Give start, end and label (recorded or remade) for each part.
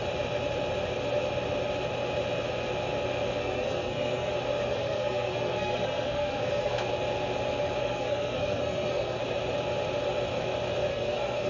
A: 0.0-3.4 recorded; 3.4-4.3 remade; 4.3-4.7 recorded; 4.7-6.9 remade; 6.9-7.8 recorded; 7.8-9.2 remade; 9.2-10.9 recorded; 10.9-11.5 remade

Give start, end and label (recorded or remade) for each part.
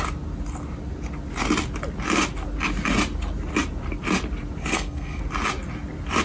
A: 0.0-4.6 recorded; 4.6-5.2 remade; 5.2-6.2 recorded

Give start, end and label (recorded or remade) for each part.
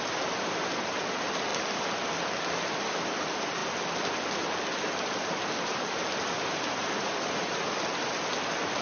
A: 0.0-8.8 recorded